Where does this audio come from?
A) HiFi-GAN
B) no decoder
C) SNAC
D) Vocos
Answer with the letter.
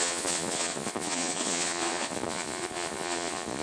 D